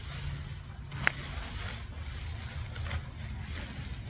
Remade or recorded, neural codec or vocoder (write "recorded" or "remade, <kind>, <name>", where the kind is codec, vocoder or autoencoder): recorded